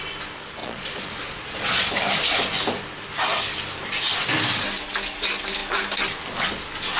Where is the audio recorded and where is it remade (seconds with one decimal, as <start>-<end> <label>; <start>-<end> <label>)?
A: 0.0-0.6 recorded; 0.6-1.9 remade; 1.9-7.0 recorded